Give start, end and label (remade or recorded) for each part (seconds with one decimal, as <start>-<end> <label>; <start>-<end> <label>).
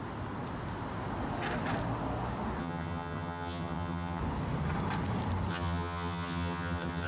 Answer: 0.0-2.6 recorded; 2.6-4.2 remade; 4.2-5.5 recorded; 5.5-7.1 remade